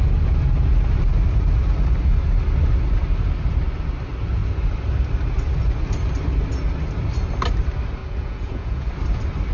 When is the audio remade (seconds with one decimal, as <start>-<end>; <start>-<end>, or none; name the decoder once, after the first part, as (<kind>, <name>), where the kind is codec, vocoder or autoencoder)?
8.0-8.9 (vocoder, Vocos)